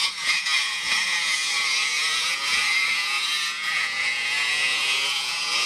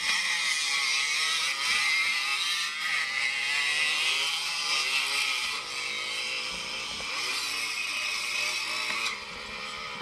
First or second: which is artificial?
first